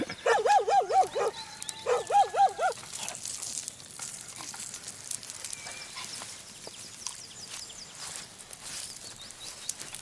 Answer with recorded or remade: recorded